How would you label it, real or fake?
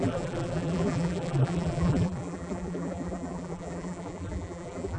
fake